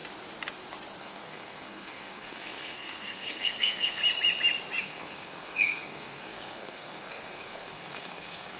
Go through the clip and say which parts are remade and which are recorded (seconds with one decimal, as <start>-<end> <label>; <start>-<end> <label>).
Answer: 0.0-1.0 recorded; 1.0-4.0 remade; 4.0-4.8 recorded; 4.8-8.6 remade